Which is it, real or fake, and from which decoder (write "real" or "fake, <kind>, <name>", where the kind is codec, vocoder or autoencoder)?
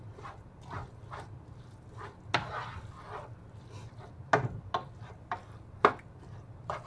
real